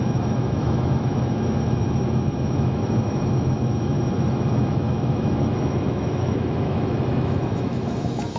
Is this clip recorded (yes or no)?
no